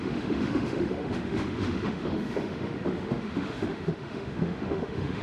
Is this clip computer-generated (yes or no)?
yes